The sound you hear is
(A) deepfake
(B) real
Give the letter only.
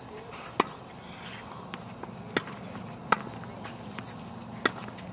B